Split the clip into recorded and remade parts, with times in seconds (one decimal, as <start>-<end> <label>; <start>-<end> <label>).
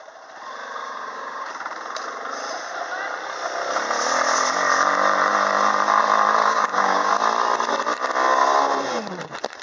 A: 0.0-0.8 recorded; 0.8-1.5 remade; 1.5-6.4 recorded; 6.4-7.1 remade; 7.1-9.6 recorded